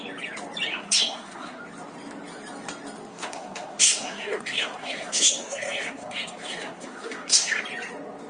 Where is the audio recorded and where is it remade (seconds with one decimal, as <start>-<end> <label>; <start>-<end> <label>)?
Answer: 0.0-0.7 recorded; 0.7-1.6 remade; 1.6-3.1 recorded; 3.1-7.6 remade; 7.6-8.3 recorded

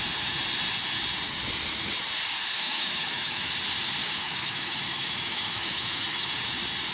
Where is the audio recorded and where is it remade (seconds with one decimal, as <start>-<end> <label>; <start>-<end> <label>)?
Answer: 0.0-2.5 recorded; 2.5-3.5 remade; 3.5-4.0 recorded; 4.0-6.3 remade; 6.3-6.9 recorded

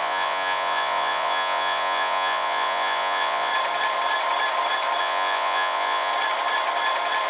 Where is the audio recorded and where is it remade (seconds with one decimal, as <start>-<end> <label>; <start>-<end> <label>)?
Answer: 0.0-3.5 remade; 3.5-5.0 recorded; 5.0-6.1 remade; 6.1-7.3 recorded

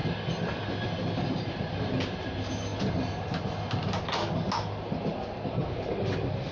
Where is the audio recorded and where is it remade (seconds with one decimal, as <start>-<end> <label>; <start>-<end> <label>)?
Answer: 0.0-6.5 recorded

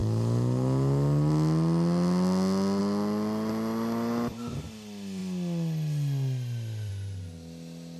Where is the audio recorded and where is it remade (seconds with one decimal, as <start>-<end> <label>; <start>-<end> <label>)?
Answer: 0.0-8.0 recorded

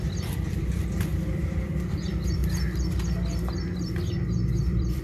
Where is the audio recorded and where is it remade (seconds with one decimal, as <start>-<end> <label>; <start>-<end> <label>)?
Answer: 0.0-2.4 remade; 2.4-4.5 recorded; 4.5-5.0 remade

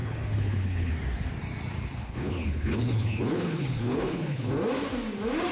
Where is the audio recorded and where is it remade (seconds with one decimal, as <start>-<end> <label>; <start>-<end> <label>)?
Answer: 0.0-0.9 remade; 0.9-2.0 recorded; 2.0-4.5 remade; 4.5-5.5 recorded

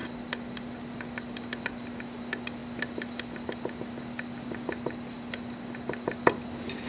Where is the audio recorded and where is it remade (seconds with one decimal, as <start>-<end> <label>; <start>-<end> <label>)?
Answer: 0.0-6.9 recorded